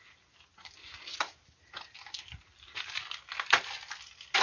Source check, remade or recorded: recorded